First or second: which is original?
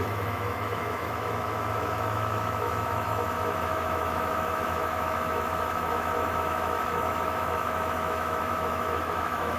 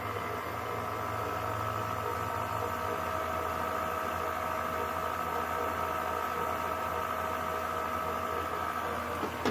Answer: second